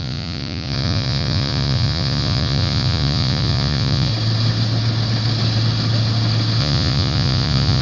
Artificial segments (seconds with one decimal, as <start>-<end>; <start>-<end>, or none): 0.0-4.1; 6.6-7.8

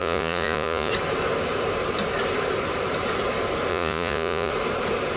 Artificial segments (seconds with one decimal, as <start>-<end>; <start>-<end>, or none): 0.0-0.9; 3.7-4.5